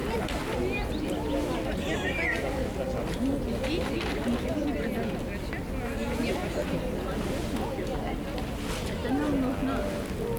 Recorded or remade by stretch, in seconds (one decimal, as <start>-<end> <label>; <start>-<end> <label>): 0.0-6.0 recorded; 6.0-6.8 remade; 6.8-10.4 recorded